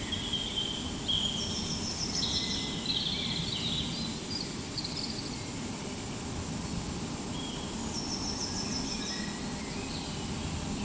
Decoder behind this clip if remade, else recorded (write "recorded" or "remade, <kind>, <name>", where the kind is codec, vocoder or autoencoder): recorded